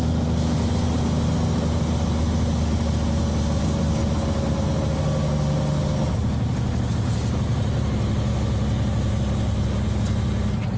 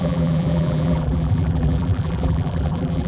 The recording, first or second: first